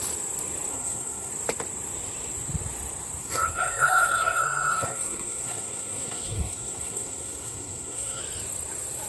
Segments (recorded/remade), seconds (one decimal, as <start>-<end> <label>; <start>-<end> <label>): 0.0-0.7 recorded; 0.7-1.3 remade; 1.3-3.2 recorded; 3.2-8.2 remade; 8.2-9.1 recorded